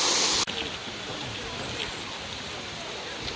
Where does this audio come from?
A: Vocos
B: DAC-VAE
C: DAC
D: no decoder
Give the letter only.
D